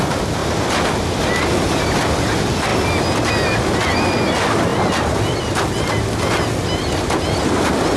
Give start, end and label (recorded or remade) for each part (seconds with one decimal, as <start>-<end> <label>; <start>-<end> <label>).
0.0-8.0 recorded